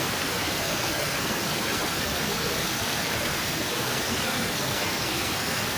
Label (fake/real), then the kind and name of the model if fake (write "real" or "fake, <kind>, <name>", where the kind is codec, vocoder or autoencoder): fake, codec, SNAC